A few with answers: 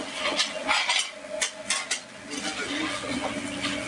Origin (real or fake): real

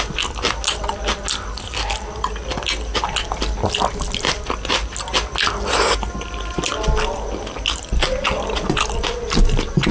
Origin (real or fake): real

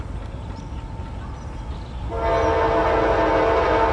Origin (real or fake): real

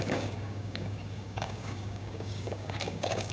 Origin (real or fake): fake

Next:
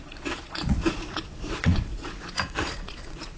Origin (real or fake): fake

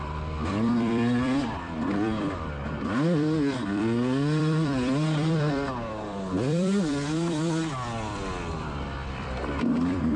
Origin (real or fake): fake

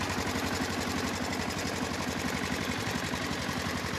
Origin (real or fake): real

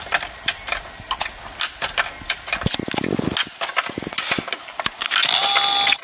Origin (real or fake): real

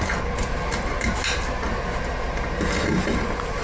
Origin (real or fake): real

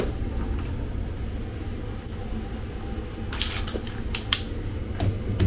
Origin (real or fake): real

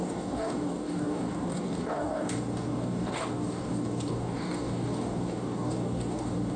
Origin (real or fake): fake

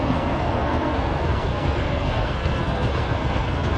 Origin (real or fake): fake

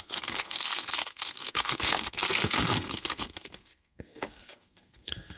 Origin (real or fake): fake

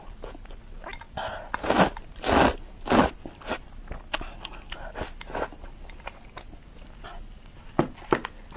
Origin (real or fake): real